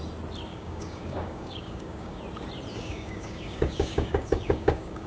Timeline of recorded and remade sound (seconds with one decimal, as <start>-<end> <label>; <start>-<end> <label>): 0.0-0.5 recorded; 0.5-2.2 remade; 2.2-2.7 recorded; 2.7-5.1 remade